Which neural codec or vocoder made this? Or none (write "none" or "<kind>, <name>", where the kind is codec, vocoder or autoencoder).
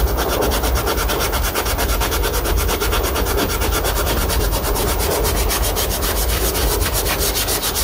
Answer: none